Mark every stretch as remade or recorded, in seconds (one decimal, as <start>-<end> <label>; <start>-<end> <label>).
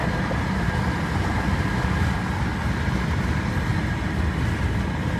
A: 0.0-5.2 recorded